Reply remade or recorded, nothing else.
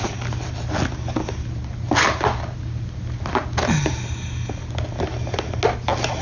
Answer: recorded